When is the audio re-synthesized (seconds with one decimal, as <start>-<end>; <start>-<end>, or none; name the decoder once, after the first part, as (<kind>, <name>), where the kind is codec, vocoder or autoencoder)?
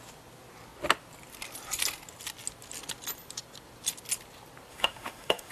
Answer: 4.7-5.5 (autoencoder, DAC-VAE)